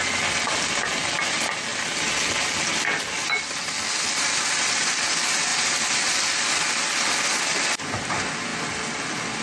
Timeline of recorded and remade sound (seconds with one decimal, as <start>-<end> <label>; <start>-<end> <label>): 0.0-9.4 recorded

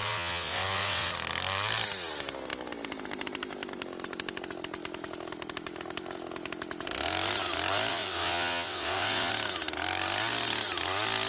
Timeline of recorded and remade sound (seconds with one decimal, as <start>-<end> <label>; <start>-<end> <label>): 0.0-1.1 remade; 1.1-7.9 recorded; 7.9-9.3 remade; 9.3-11.3 recorded

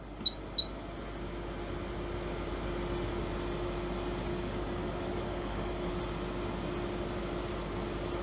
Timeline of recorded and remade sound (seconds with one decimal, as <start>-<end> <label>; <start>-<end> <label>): 0.0-4.3 recorded; 4.3-5.9 remade; 5.9-8.2 recorded

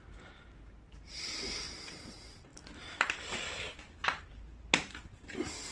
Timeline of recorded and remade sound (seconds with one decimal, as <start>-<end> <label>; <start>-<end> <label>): 0.0-5.7 recorded

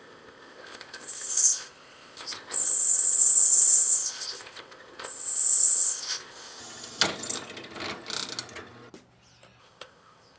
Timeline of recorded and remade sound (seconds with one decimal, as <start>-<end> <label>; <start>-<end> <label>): 0.0-6.6 remade; 6.6-9.6 recorded; 9.6-10.4 remade

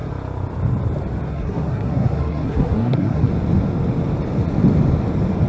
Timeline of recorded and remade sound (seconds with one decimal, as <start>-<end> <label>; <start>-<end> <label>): 0.0-1.3 recorded; 1.3-3.3 remade; 3.3-5.5 recorded